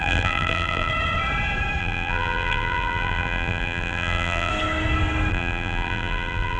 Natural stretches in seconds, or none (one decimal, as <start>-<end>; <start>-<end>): 0.9-1.8; 4.5-5.3